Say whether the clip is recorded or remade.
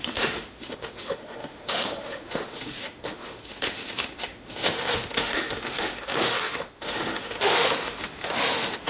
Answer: remade